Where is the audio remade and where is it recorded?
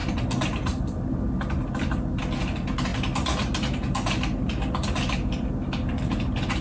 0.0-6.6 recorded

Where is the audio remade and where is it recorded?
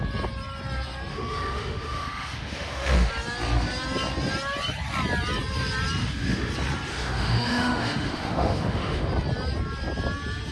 0.0-1.1 recorded; 1.1-3.1 remade; 3.1-6.0 recorded; 6.0-6.5 remade; 6.5-6.9 recorded; 6.9-9.1 remade; 9.1-10.5 recorded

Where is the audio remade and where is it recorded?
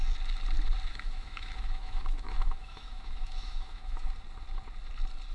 0.0-0.9 recorded; 0.9-4.1 remade; 4.1-5.3 recorded